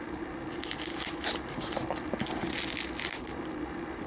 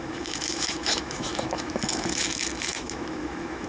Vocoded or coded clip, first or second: second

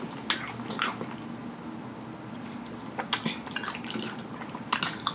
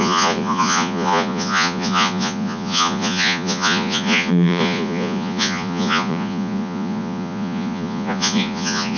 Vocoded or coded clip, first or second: second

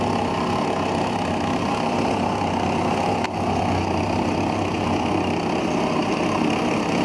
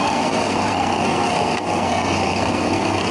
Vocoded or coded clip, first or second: second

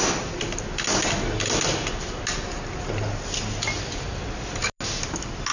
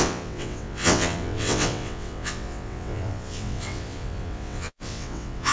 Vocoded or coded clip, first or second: second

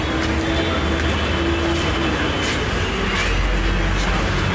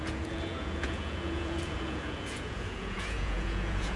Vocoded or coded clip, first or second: second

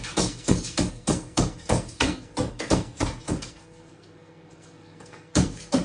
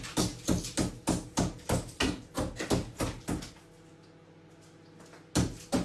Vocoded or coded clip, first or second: first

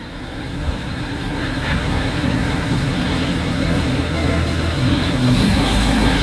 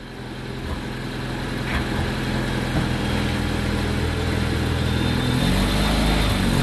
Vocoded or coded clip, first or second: first